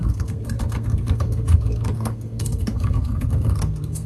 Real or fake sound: fake